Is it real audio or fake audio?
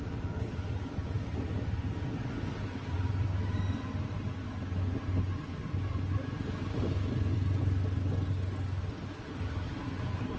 real